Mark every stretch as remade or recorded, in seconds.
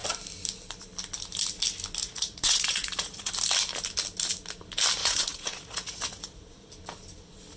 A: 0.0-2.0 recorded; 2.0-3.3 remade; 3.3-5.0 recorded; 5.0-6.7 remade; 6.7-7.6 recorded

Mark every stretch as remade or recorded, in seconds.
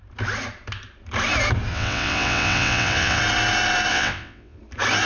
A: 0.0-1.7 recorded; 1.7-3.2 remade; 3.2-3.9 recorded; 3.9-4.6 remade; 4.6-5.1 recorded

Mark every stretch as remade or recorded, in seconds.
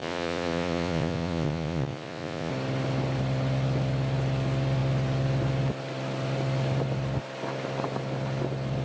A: 0.0-2.5 remade; 2.5-8.8 recorded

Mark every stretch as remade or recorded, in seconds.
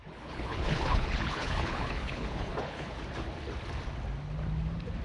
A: 0.0-3.0 remade; 3.0-5.0 recorded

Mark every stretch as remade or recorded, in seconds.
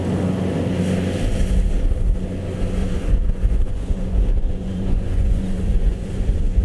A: 0.0-2.8 recorded; 2.8-6.6 remade